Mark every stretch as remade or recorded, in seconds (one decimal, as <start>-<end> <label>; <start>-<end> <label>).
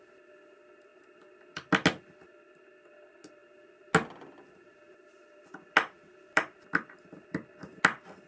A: 0.0-8.3 recorded